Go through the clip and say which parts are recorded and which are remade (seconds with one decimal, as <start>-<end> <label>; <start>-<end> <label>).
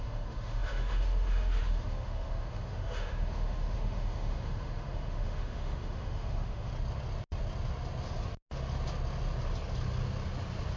0.0-6.7 remade; 6.7-10.8 recorded